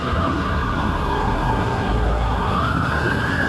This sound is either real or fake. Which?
fake